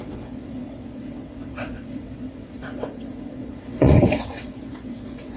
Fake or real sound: fake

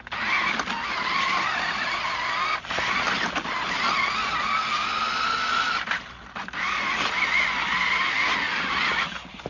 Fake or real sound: real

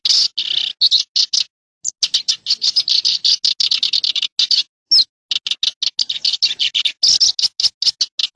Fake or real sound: real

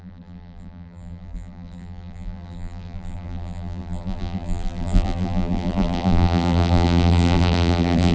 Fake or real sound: fake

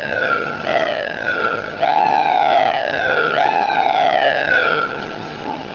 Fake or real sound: fake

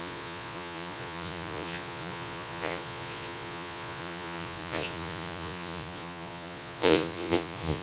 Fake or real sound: fake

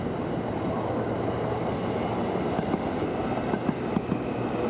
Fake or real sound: real